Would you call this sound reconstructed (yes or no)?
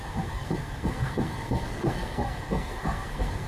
yes